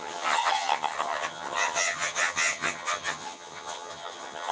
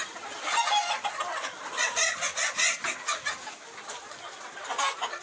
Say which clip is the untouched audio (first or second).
second